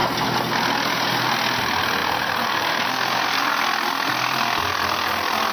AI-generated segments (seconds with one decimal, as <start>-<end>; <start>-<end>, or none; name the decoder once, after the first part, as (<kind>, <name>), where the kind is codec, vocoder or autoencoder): 2.0-2.9 (vocoder, BigVGAN v2)